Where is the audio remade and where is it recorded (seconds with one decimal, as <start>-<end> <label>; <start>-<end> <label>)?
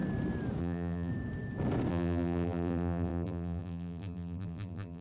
0.0-0.6 recorded; 0.6-1.1 remade; 1.1-1.9 recorded; 1.9-5.0 remade